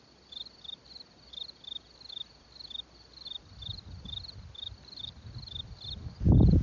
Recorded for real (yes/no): yes